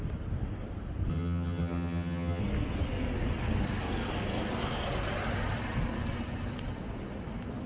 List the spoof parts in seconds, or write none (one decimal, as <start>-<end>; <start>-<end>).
1.1-2.4